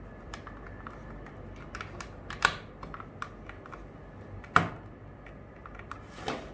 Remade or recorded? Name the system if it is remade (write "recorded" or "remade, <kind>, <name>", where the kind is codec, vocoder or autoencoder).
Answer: recorded